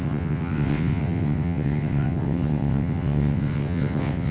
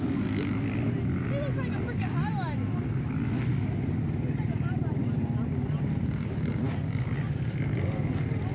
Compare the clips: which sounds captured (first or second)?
second